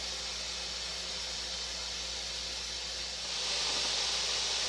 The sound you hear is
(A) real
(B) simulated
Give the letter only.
A